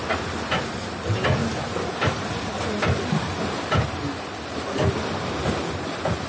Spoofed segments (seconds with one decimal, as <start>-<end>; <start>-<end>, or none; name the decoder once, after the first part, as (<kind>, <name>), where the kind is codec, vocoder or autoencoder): none